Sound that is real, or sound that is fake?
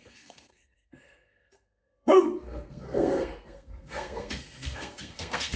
fake